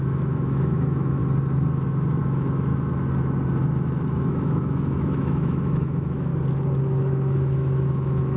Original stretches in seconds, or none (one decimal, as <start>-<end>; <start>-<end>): 1.2-2.2; 2.7-4.3; 6.3-6.8